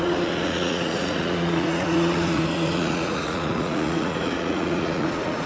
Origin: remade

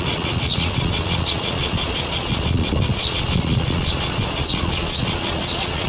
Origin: remade